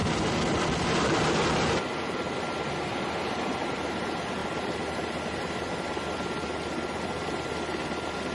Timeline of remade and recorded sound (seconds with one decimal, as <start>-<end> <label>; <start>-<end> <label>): 0.0-8.3 recorded